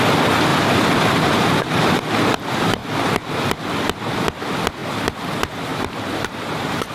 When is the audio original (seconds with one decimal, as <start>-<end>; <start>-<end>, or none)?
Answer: 0.0-0.5; 2.0-5.7